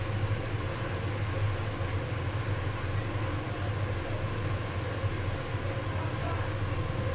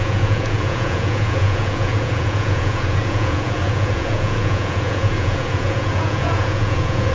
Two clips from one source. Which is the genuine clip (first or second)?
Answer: first